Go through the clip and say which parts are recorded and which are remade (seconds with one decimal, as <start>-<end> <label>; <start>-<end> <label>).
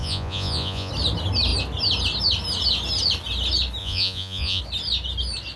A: 0.0-0.9 remade; 0.9-3.8 recorded; 3.8-4.6 remade; 4.6-5.6 recorded